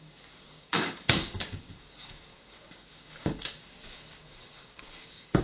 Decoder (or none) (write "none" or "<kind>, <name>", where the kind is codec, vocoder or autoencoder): codec, DAC